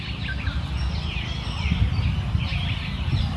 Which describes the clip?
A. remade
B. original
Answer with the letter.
A